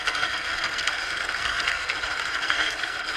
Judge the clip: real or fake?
fake